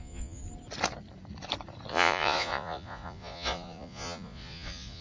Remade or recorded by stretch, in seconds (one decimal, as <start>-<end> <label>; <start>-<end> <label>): 0.0-0.4 remade; 0.4-1.9 recorded; 1.9-5.0 remade